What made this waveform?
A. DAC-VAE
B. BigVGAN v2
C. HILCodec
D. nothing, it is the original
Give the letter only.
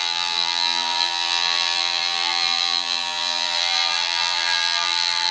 B